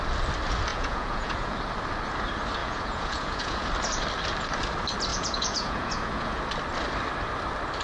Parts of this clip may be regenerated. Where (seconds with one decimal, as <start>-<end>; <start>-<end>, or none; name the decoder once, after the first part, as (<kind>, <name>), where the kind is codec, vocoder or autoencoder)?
0.7-1.6 (vocoder, Vocos); 2.6-3.7; 5.1-6.4